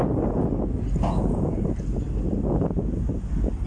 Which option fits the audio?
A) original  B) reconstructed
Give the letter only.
A